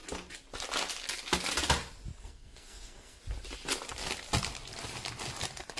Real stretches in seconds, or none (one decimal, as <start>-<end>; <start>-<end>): 0.0-2.1; 3.2-5.8